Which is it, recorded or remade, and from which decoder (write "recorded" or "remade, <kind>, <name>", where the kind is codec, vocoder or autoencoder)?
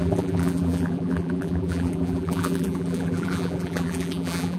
remade, vocoder, BigVGAN v2